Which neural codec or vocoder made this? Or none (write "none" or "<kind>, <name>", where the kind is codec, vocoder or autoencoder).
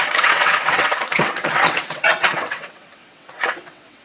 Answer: vocoder, WaveNeXt